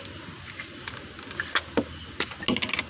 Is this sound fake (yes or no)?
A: no